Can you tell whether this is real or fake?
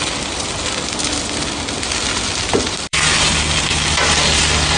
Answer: fake